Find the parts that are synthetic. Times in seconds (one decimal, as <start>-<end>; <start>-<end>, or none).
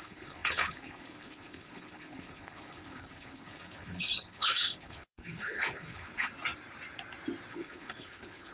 0.0-6.3; 7.5-8.5